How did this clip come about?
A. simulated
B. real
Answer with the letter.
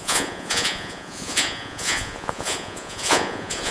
A